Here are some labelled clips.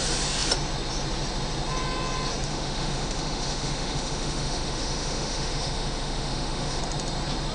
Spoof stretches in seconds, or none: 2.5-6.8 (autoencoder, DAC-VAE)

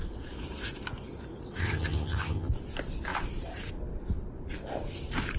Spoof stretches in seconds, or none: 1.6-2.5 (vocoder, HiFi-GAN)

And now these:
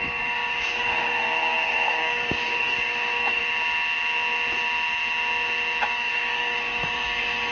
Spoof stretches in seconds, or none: 0.0-3.4 (codec, DAC); 5.8-7.5

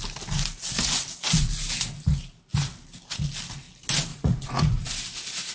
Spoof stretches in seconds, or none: 4.1-4.9 (vocoder, Vocos)